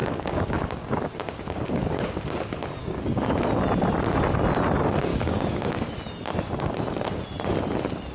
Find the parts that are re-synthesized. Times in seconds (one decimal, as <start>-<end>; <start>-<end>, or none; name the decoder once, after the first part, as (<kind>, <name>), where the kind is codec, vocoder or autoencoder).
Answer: 0.0-2.1 (codec, DAC); 2.8-3.3; 5.1-5.9